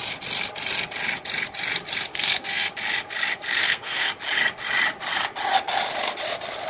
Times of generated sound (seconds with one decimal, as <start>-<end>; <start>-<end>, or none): 2.1-2.7; 3.6-4.1